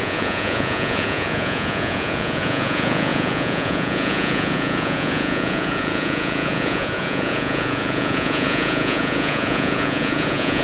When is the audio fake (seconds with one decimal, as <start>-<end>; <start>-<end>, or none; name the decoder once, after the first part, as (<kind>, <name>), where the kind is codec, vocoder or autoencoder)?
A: 0.0-10.6 (vocoder, Vocos)